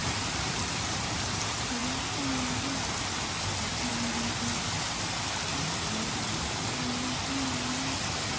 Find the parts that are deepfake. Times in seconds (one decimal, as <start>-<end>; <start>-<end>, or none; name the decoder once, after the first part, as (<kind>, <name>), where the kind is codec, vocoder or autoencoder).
0.0-1.4 (vocoder, BigVGAN v2); 5.5-6.1